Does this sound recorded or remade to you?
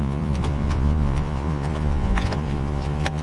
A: remade